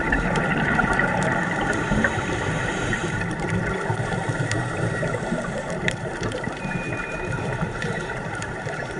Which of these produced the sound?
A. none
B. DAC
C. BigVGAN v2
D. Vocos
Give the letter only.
C